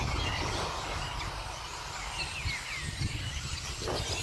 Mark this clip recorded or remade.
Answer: recorded